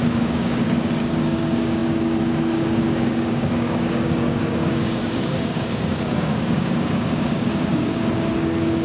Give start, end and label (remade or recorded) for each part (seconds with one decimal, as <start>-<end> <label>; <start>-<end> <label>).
0.0-8.8 remade